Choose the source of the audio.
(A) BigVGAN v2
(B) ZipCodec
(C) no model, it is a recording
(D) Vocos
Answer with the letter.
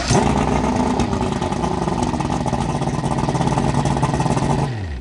C